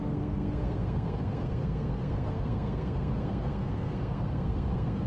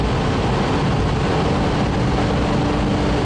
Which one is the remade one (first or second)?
first